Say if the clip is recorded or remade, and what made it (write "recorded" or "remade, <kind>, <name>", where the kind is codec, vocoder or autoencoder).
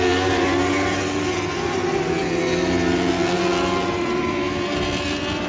recorded